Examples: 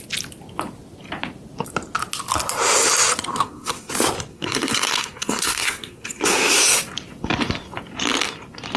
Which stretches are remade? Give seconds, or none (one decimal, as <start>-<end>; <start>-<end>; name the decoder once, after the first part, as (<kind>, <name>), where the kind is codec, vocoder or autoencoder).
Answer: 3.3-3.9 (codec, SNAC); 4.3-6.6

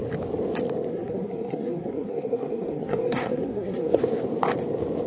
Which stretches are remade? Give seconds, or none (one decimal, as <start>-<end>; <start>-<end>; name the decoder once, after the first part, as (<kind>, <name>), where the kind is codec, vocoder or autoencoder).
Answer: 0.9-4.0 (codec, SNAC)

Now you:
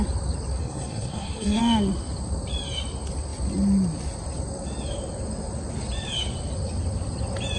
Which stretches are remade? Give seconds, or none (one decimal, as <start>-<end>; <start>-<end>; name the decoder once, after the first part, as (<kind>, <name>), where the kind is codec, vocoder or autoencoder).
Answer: 0.6-1.6 (codec, SNAC)